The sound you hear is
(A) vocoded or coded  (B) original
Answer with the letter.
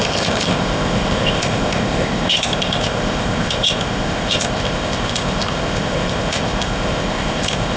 A